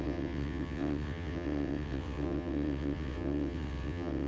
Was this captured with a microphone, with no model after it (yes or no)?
no